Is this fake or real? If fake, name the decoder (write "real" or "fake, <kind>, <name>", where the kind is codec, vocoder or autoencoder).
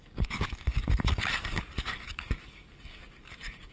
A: fake, codec, DAC